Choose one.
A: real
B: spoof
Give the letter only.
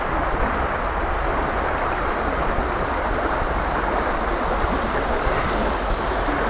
B